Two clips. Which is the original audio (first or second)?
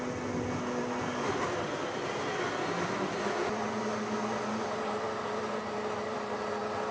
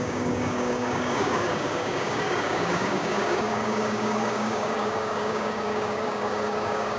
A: first